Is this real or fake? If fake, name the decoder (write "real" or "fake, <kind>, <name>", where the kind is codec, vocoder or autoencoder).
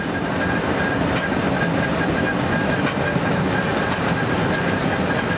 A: real